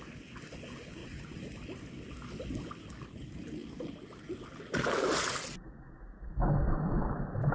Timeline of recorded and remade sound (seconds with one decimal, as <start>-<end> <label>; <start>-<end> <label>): 0.0-1.0 recorded; 1.0-1.5 remade; 1.5-7.5 recorded